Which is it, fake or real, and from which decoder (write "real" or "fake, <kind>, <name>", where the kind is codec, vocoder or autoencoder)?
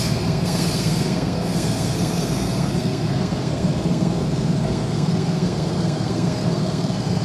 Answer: fake, codec, SNAC